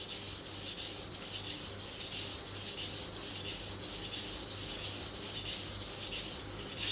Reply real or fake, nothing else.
real